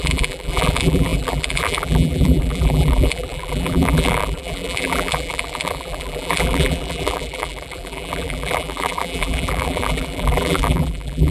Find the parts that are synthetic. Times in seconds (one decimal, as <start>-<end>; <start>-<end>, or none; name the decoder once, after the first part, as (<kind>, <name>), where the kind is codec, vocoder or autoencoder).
0.0-11.3 (vocoder, BigVGAN v2)